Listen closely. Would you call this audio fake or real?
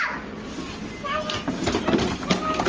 real